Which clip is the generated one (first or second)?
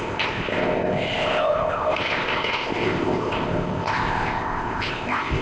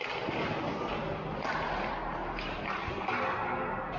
first